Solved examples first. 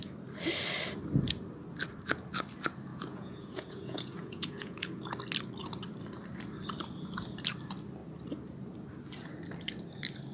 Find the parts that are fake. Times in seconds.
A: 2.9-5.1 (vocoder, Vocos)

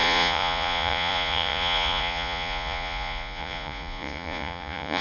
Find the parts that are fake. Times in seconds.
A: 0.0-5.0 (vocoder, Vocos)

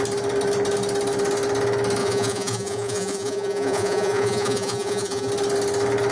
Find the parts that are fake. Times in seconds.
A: 2.0-5.3 (vocoder, Vocos)

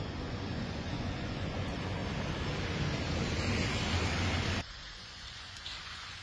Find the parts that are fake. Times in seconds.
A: 0.0-2.0 (vocoder, Vocos); 4.6-6.2